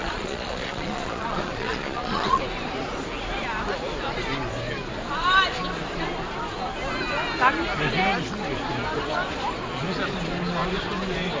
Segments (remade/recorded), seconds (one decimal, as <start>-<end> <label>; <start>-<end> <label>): 0.0-2.4 remade; 2.4-11.4 recorded